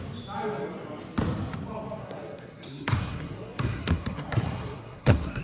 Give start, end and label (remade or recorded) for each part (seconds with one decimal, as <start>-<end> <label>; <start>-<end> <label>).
0.0-2.0 recorded; 2.0-5.4 remade